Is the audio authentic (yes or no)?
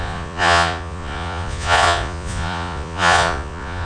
no